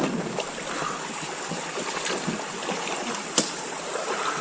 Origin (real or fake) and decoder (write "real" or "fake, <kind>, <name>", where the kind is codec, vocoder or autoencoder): real